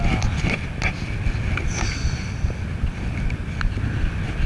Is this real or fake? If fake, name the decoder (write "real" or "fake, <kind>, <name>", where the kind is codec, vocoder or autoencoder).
real